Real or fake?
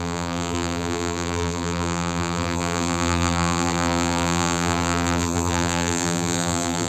fake